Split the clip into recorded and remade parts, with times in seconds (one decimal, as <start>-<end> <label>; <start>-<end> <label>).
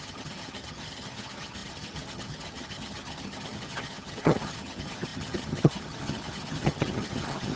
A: 0.0-7.6 remade